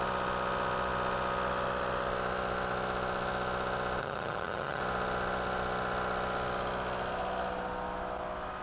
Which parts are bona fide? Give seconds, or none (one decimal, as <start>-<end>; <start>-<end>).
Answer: 0.0-4.0; 4.8-8.6